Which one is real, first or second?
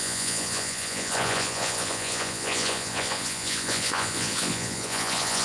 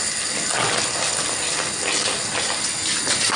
second